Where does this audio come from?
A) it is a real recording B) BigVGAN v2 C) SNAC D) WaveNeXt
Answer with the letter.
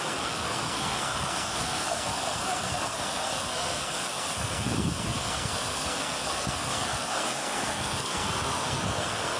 C